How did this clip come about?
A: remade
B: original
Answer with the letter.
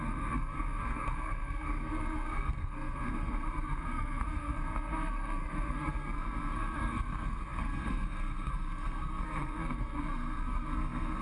A